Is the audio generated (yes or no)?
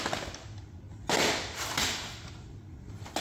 no